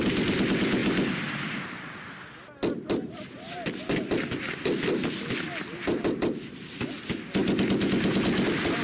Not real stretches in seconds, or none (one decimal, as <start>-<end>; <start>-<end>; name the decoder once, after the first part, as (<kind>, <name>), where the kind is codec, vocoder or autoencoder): none